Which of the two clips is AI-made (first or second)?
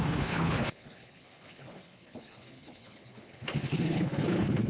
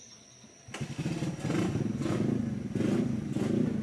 first